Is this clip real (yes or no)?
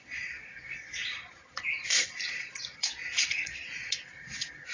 no